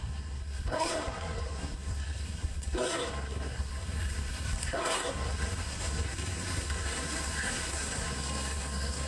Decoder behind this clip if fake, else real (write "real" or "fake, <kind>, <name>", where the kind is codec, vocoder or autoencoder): fake, codec, SNAC